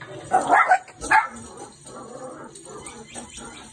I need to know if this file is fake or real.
real